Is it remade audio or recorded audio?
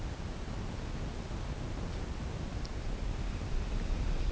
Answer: recorded